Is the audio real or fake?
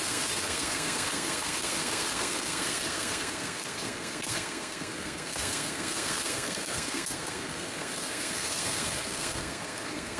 fake